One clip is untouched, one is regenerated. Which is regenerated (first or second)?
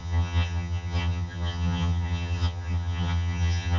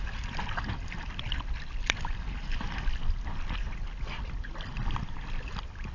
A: first